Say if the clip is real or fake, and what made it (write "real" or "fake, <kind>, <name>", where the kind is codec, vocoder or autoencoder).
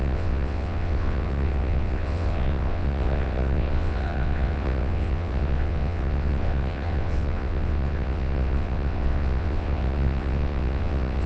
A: fake, vocoder, WaveNeXt